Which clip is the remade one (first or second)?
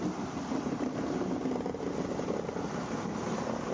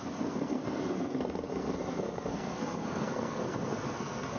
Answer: second